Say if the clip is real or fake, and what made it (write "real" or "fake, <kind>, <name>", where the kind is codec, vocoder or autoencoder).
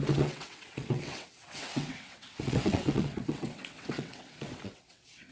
fake, vocoder, WaveNeXt